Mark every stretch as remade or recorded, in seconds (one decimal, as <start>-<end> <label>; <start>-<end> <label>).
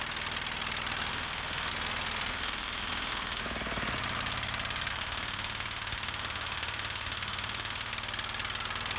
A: 0.0-1.1 recorded; 1.1-1.7 remade; 1.7-2.3 recorded; 2.3-3.4 remade; 3.4-4.9 recorded; 4.9-7.9 remade; 7.9-9.0 recorded